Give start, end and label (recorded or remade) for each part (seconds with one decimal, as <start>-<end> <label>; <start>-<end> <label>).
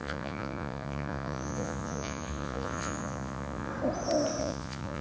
0.0-3.7 remade; 3.7-4.4 recorded; 4.4-5.0 remade